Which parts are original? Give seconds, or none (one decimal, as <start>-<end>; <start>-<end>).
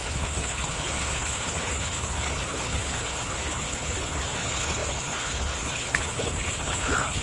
none